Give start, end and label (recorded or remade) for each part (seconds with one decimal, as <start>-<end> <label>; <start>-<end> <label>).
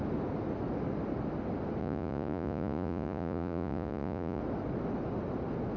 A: 0.0-1.8 recorded; 1.8-4.4 remade; 4.4-5.8 recorded